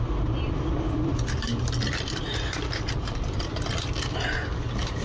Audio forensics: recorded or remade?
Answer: remade